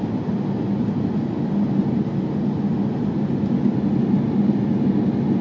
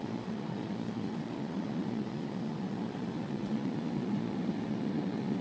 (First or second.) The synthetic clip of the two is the second